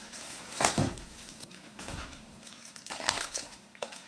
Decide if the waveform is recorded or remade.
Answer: remade